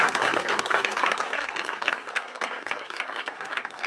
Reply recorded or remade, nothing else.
remade